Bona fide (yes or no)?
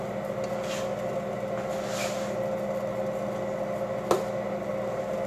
yes